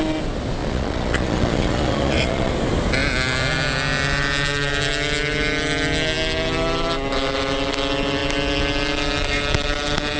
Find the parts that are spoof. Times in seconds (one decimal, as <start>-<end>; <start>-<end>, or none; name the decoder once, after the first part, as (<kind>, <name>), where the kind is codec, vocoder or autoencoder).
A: 0.6-2.5 (vocoder, Vocos)